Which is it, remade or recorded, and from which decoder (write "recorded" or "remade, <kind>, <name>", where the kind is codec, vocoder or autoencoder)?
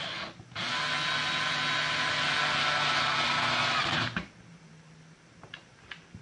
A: recorded